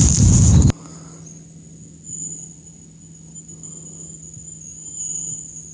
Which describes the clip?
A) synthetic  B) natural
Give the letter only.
B